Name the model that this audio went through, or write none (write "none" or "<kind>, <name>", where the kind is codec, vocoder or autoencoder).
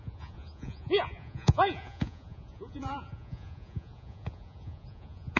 vocoder, Vocos